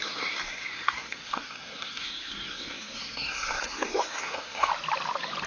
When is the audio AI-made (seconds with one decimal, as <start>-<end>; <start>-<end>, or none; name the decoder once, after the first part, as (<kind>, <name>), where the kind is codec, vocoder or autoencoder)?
0.0-4.7 (codec, SNAC)